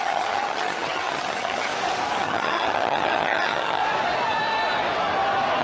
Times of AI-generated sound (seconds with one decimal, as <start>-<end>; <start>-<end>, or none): 0.0-1.7; 2.2-3.8